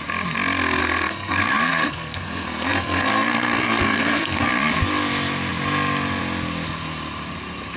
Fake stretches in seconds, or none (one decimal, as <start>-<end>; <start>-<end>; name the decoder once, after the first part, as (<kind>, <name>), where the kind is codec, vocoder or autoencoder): 0.8-4.5 (codec, SNAC)